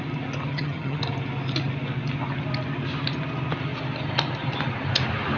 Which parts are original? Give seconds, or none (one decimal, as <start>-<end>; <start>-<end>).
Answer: 0.0-0.5; 1.0-5.4